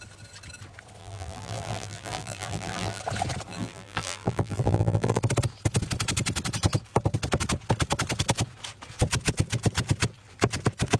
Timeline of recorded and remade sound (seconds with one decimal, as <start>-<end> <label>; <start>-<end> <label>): 0.0-1.0 recorded; 1.0-3.0 remade; 3.0-3.5 recorded; 3.5-5.2 remade; 5.2-11.0 recorded